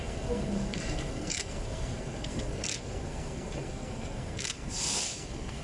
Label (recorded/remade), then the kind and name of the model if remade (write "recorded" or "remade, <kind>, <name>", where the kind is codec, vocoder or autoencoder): remade, codec, SNAC